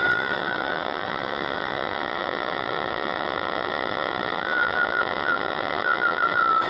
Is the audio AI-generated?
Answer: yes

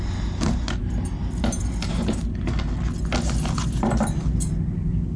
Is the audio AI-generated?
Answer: no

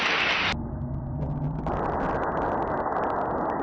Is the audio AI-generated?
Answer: no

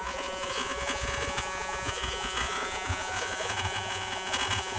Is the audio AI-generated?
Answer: yes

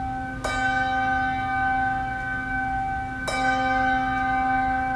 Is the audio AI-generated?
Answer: no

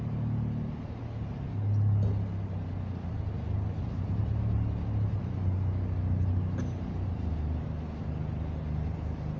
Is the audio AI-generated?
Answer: no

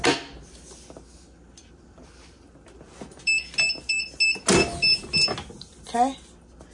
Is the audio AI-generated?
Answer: no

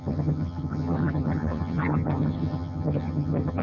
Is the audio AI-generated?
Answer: yes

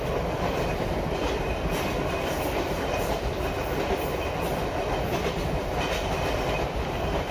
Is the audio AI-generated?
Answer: no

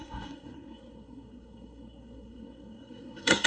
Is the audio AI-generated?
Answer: yes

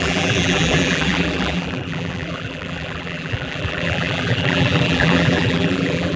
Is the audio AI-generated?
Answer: yes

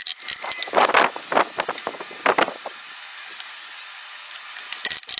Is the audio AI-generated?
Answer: no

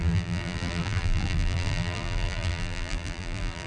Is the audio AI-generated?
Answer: yes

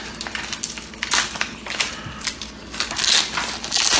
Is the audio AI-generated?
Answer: no